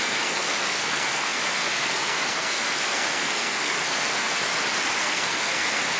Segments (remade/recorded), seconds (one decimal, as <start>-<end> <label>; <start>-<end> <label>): 0.0-4.5 remade; 4.5-5.0 recorded; 5.0-6.0 remade